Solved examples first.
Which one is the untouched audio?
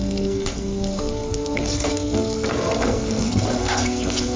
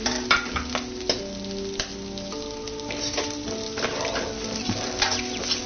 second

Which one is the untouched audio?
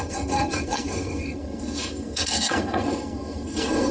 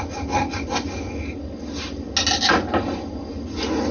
second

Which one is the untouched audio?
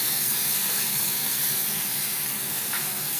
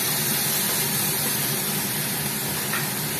second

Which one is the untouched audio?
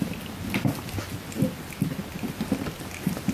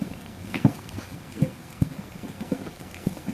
first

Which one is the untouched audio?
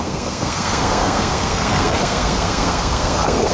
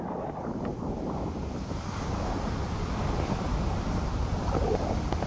second